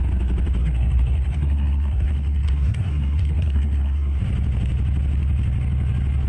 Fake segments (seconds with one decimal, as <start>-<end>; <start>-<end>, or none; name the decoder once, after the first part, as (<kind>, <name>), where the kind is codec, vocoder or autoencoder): 0.6-4.2 (codec, SNAC)